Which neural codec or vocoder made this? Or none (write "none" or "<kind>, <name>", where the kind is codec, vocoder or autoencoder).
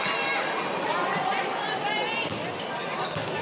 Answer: none